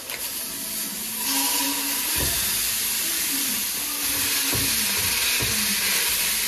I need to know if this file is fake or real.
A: real